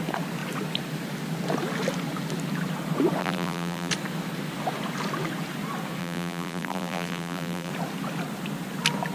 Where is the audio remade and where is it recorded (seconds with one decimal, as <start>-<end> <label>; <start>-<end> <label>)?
0.0-3.2 recorded; 3.2-3.9 remade; 3.9-6.0 recorded; 6.0-7.7 remade; 7.7-9.1 recorded